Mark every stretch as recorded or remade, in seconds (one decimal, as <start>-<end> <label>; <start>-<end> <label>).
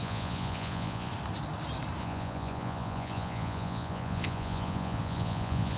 0.0-1.1 remade; 1.1-2.0 recorded; 2.0-5.8 remade